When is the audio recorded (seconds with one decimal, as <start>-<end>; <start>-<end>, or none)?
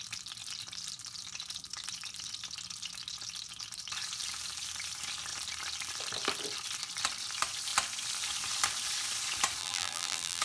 0.0-9.6